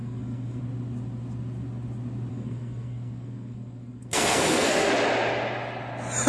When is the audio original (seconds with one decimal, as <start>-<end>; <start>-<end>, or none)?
0.6-2.3; 4.9-6.3